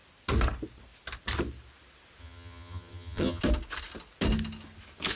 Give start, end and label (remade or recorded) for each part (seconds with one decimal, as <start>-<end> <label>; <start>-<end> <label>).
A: 0.0-2.2 recorded; 2.2-3.4 remade; 3.4-5.2 recorded